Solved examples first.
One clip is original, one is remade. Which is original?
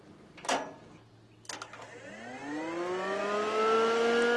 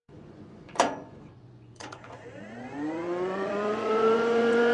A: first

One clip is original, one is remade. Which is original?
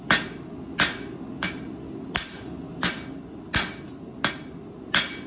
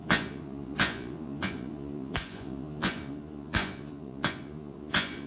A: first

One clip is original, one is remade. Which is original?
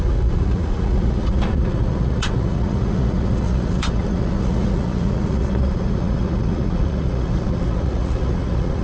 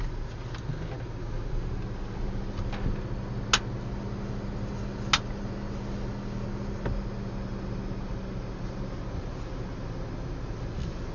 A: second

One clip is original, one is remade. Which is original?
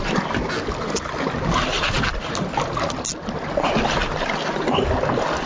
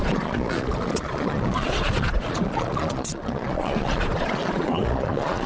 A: first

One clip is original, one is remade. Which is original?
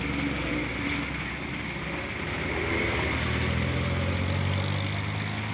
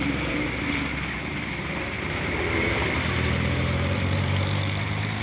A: first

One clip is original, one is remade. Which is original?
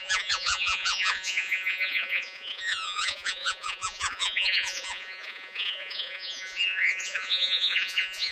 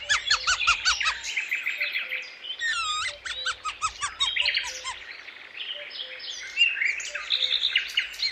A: second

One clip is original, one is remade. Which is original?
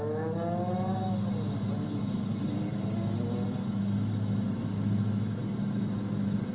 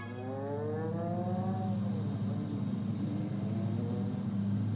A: second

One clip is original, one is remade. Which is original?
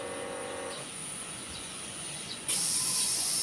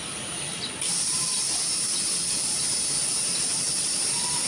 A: second